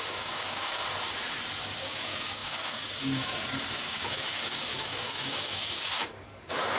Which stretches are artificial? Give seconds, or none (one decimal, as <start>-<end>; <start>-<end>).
0.0-0.8; 1.9-6.8